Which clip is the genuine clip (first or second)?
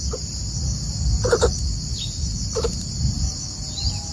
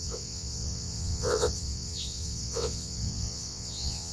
first